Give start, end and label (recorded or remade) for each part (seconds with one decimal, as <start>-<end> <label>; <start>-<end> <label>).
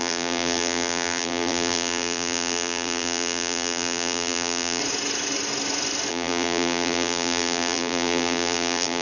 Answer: 0.0-4.8 remade; 4.8-6.1 recorded; 6.1-9.0 remade